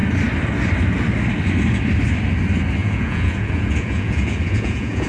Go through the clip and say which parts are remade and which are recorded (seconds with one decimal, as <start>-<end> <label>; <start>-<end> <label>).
0.0-2.8 recorded; 2.8-5.1 remade